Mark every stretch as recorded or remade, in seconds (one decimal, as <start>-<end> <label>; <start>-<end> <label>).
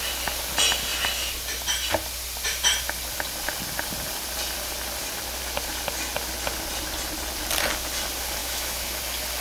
0.0-8.4 recorded; 8.4-9.0 remade; 9.0-9.4 recorded